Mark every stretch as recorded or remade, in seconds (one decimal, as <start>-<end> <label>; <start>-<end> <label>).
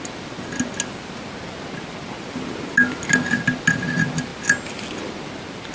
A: 0.0-5.7 recorded